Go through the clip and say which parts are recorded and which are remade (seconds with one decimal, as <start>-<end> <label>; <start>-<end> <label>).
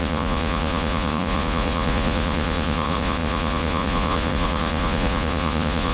0.0-5.9 remade